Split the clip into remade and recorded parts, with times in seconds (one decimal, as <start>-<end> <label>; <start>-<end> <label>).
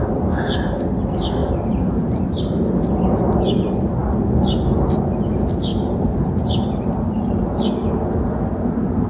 0.0-1.4 recorded; 1.4-2.4 remade; 2.4-5.7 recorded; 5.7-7.4 remade; 7.4-9.1 recorded